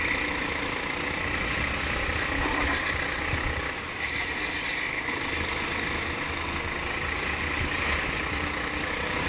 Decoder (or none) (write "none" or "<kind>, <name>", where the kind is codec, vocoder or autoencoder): none